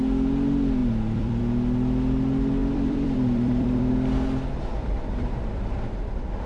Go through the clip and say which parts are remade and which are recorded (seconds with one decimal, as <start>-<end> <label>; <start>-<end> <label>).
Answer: 0.0-0.8 recorded; 0.8-1.4 remade; 1.4-2.6 recorded; 2.6-3.9 remade; 3.9-4.8 recorded; 4.8-5.8 remade; 5.8-6.5 recorded